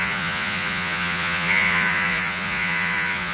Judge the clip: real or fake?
fake